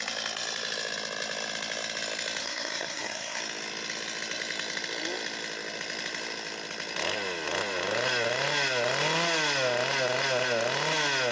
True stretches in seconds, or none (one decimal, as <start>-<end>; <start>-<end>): 0.0-2.4; 3.4-11.3